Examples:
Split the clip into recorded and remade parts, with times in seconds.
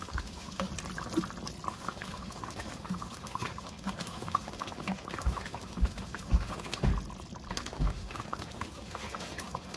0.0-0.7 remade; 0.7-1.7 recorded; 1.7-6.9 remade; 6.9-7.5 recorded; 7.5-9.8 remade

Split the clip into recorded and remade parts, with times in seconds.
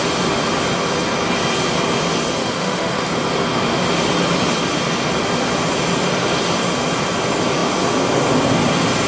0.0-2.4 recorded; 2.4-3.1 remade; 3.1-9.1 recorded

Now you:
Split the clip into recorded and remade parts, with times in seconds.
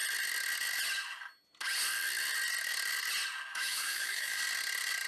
0.0-3.5 recorded; 3.5-4.4 remade; 4.4-5.1 recorded